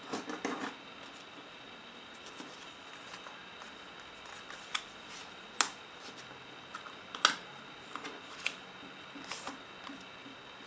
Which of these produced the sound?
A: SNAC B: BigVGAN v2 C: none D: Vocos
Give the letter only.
C